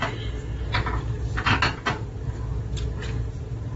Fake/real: real